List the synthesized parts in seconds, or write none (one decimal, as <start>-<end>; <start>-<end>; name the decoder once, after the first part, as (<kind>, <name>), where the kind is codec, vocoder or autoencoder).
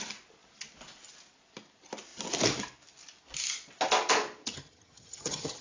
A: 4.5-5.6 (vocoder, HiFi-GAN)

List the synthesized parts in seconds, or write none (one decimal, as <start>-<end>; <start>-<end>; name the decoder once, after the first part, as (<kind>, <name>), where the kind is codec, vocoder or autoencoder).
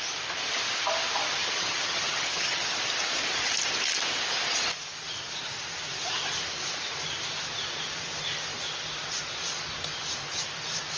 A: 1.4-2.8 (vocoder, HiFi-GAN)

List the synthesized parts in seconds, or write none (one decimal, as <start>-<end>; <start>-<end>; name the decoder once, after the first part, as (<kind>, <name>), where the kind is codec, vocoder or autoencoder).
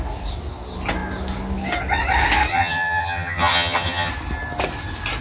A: 2.5-4.1 (vocoder, HiFi-GAN)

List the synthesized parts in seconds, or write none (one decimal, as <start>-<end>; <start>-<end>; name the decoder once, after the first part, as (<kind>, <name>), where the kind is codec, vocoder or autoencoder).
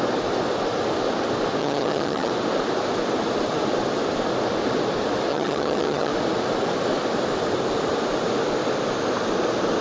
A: 1.6-2.3 (vocoder, HiFi-GAN); 5.3-6.1